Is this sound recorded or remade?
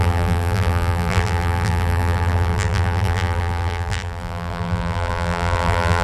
remade